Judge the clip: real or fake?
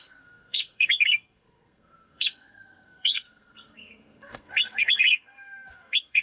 fake